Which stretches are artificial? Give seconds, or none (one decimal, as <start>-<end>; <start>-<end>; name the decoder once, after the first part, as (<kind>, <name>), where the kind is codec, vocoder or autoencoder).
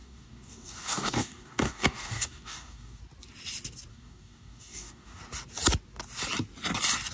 0.0-3.0 (codec, DAC); 3.9-5.2